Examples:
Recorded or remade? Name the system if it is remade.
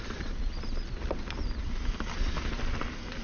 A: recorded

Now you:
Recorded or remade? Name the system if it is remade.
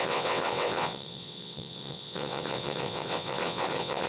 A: remade, vocoder, WaveNeXt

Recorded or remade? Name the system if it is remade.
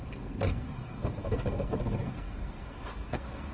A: remade, codec, SNAC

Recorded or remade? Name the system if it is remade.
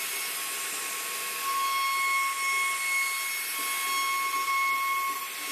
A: recorded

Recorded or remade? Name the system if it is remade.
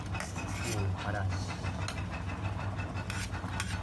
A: recorded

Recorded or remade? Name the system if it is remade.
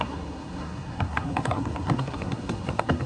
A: remade, codec, SNAC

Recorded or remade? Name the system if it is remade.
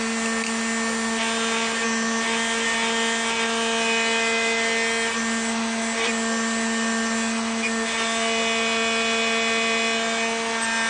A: recorded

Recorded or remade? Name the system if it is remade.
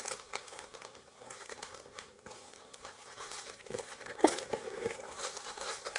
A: remade, codec, SNAC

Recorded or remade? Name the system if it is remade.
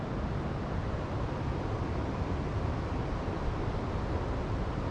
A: recorded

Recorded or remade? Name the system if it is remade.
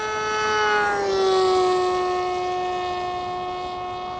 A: recorded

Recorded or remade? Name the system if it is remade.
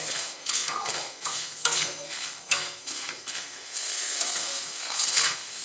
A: remade, codec, SNAC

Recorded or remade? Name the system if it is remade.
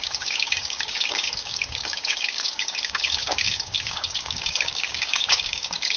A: remade, codec, DAC